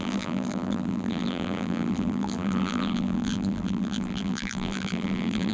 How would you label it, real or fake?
fake